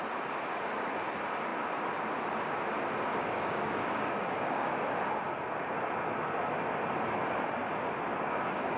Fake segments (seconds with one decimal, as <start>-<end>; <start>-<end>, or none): 3.1-4.7; 8.1-8.8